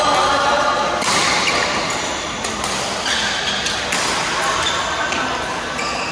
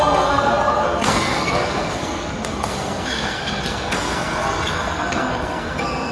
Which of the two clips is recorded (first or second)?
first